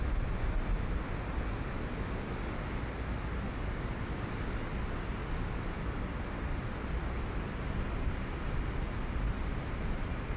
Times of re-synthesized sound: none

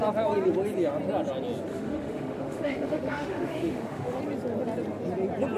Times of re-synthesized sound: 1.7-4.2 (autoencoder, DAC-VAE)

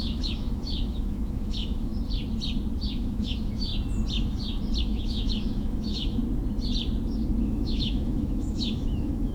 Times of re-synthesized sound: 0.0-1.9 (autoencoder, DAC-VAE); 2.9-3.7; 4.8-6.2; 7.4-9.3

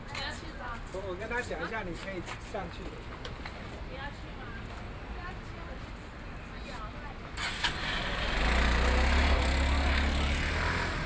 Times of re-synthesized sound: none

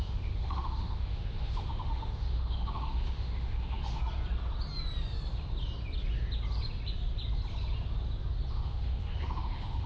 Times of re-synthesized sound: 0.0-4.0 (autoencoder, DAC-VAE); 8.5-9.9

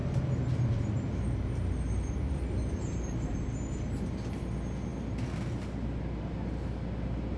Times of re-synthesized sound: none

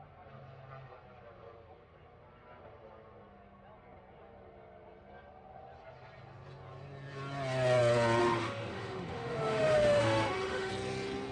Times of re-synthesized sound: 8.2-10.7 (autoencoder, DAC-VAE)